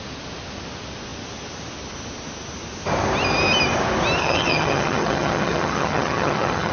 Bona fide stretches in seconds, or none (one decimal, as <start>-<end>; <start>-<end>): 0.0-4.2